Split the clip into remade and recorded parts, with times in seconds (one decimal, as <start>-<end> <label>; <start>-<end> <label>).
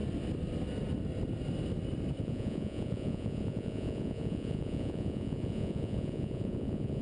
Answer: 0.0-2.2 recorded; 2.2-7.0 remade